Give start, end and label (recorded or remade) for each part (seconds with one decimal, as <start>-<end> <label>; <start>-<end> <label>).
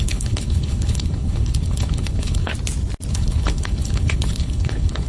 0.0-2.5 remade; 2.5-3.1 recorded; 3.1-5.1 remade